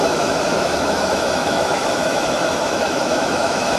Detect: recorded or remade remade